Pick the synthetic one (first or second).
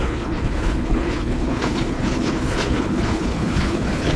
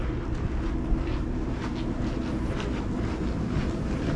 first